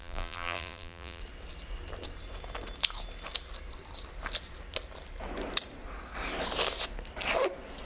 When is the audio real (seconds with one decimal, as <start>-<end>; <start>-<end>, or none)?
1.2-7.9